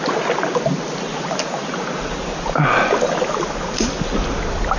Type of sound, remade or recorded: recorded